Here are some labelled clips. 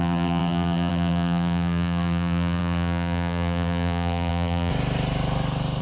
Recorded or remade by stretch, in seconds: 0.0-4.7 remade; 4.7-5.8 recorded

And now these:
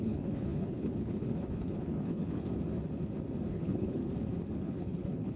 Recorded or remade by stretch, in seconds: 0.0-2.5 remade; 2.5-3.5 recorded; 3.5-4.0 remade; 4.0-4.6 recorded; 4.6-5.4 remade

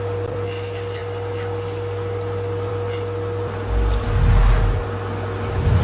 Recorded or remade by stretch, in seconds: 0.0-5.8 recorded

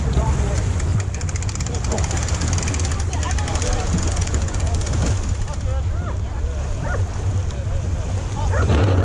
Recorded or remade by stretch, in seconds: 0.0-0.9 remade; 0.9-4.1 recorded; 4.1-5.0 remade; 5.0-8.2 recorded; 8.2-9.0 remade

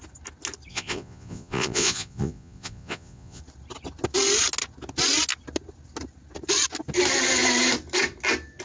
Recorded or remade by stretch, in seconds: 0.0-0.7 recorded; 0.7-3.4 remade; 3.4-8.6 recorded